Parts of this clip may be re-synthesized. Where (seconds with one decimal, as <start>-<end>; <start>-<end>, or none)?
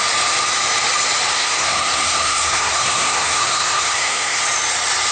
1.3-4.4